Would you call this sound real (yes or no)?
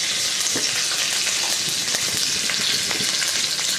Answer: yes